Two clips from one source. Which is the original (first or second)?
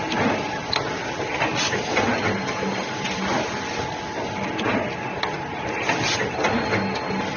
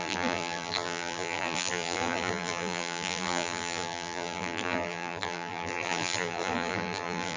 first